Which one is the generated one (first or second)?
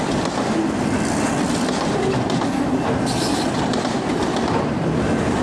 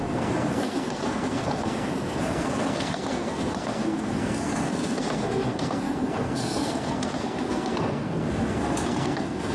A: second